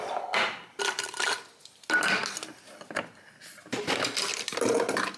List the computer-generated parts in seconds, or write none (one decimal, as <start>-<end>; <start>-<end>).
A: none